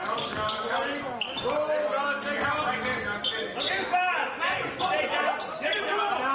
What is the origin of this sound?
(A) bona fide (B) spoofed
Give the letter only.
A